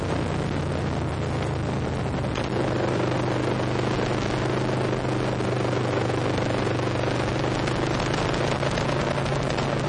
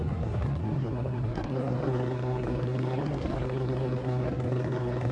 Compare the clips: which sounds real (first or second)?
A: first